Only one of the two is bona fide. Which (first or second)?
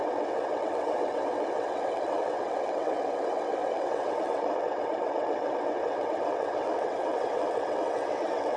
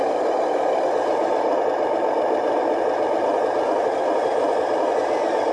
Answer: second